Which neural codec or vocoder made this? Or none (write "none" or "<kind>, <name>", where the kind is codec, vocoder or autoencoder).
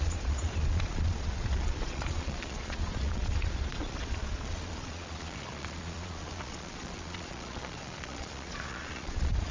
vocoder, Vocos